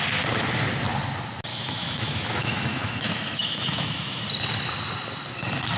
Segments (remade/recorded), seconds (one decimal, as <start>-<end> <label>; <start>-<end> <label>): 0.0-1.5 recorded; 1.5-4.2 remade; 4.2-5.8 recorded